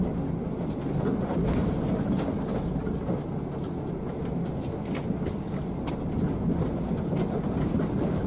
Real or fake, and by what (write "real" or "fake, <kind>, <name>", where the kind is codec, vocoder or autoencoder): real